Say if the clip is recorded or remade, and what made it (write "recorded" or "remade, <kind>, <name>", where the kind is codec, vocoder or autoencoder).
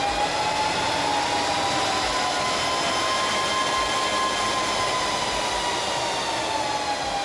recorded